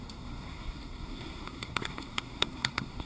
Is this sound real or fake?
fake